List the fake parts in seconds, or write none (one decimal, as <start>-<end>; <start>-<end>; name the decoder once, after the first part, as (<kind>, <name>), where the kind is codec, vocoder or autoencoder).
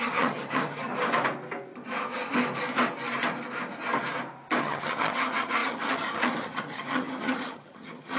0.0-0.9 (vocoder, HiFi-GAN); 4.6-8.2